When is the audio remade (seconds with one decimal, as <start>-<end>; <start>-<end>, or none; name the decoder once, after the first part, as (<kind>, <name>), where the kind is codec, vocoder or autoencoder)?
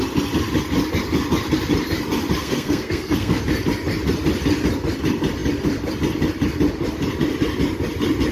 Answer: 2.4-3.4 (codec, SNAC)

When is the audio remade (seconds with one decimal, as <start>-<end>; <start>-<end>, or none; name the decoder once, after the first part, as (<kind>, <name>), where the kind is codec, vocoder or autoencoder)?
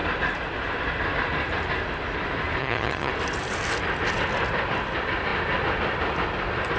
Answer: 2.6-3.1 (vocoder, HiFi-GAN)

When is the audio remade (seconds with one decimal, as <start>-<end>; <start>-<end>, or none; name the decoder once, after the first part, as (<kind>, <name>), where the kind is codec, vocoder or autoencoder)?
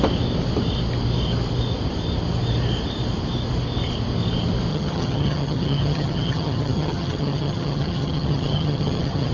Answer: 4.7-9.3 (vocoder, HiFi-GAN)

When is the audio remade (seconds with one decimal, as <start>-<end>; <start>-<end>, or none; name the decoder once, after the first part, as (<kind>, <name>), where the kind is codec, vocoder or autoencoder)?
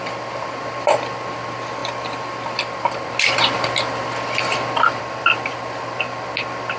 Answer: none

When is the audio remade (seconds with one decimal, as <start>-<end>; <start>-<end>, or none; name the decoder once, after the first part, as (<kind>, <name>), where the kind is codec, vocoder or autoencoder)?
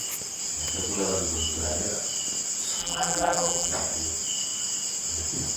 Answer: 2.8-3.7 (vocoder, BigVGAN v2)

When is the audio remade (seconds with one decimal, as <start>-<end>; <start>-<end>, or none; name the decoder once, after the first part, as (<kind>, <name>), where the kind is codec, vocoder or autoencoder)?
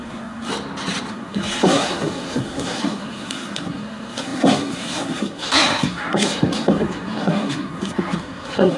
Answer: 0.0-0.5 (codec, SNAC); 1.1-8.8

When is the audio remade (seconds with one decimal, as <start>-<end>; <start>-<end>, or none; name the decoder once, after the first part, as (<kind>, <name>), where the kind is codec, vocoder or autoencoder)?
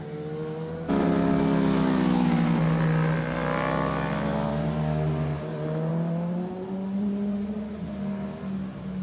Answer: 5.9-7.9 (vocoder, Vocos)